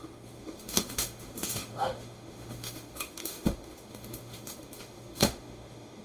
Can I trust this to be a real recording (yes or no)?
no